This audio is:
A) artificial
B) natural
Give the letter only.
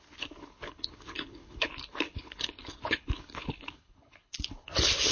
A